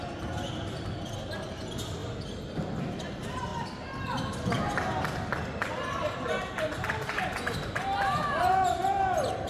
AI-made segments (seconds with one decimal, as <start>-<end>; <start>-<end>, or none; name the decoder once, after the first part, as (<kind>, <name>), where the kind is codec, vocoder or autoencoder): none